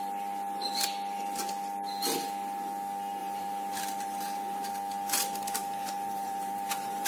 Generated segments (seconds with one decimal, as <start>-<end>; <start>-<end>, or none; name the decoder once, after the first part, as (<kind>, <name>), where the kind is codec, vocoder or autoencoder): 3.2-4.7 (vocoder, BigVGAN v2); 5.6-7.1